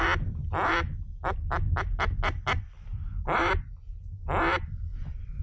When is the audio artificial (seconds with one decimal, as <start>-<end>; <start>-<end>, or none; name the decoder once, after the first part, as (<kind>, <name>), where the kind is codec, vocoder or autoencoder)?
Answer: 2.9-3.5 (vocoder, BigVGAN v2)